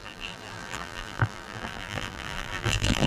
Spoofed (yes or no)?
yes